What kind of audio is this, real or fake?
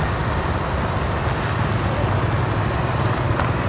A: real